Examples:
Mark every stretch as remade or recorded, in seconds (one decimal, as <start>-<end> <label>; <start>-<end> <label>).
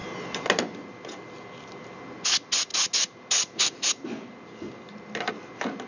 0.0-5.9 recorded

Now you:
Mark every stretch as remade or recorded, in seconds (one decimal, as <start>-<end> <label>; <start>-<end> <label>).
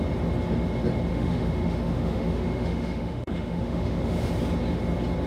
0.0-1.1 recorded; 1.1-4.3 remade; 4.3-5.3 recorded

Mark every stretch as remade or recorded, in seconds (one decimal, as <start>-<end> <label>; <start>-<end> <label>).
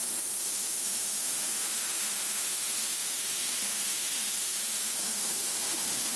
0.0-6.2 remade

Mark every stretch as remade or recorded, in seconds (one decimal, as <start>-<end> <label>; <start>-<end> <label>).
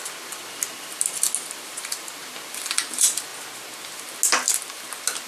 0.0-5.3 recorded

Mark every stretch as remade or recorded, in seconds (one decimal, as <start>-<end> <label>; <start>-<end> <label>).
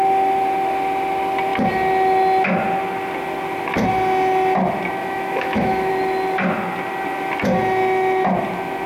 0.0-5.0 recorded; 5.0-5.9 remade; 5.9-8.9 recorded